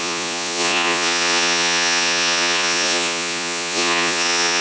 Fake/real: fake